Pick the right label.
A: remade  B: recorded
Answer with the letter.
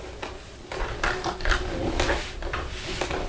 B